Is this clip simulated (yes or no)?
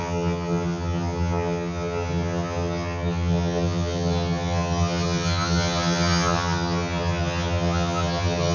yes